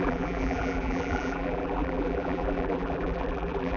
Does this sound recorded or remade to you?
remade